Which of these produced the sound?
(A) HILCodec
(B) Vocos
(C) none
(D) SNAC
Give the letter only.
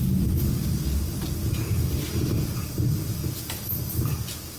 C